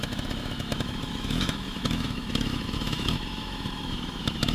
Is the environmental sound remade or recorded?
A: remade